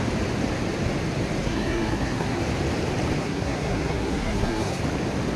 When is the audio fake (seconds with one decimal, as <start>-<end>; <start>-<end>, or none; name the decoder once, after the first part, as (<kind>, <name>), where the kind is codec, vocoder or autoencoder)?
1.4-2.4 (codec, SNAC); 3.2-4.8